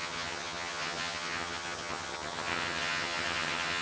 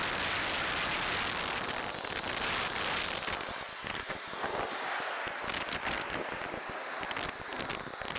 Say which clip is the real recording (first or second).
second